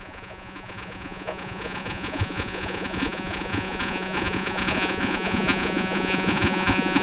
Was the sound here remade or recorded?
remade